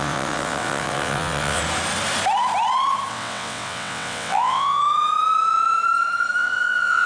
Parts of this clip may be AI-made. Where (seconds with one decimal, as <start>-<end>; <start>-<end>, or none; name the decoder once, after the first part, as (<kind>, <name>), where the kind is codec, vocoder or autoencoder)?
0.0-1.6 (vocoder, WaveNeXt); 3.1-4.8; 6.4-7.1